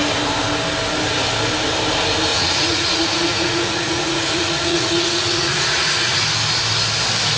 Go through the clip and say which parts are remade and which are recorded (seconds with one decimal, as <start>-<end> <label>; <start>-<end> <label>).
0.0-2.3 recorded; 2.3-6.2 remade; 6.2-7.4 recorded